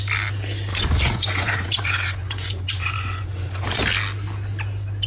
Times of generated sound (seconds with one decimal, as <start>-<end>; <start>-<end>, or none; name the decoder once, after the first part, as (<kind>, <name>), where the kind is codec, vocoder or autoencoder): 0.7-3.8 (vocoder, Vocos)

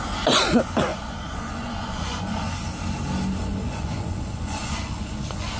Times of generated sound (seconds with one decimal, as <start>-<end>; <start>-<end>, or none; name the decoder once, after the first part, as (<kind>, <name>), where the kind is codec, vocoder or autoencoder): 0.9-2.5 (vocoder, Vocos); 3.4-5.6

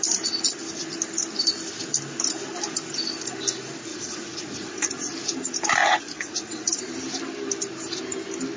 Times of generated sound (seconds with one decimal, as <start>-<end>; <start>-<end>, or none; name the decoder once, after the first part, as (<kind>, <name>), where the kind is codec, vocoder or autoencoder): 3.9-5.1 (vocoder, Vocos); 5.8-6.8

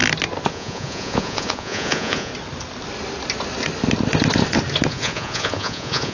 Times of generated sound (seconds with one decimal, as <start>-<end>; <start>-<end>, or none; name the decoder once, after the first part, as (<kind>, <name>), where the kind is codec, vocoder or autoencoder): 0.5-2.3 (vocoder, Vocos); 4.9-6.1

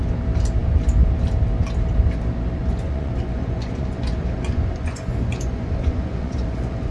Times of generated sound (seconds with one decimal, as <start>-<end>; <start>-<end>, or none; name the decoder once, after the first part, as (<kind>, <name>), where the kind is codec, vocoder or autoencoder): 2.6-6.9 (vocoder, Vocos)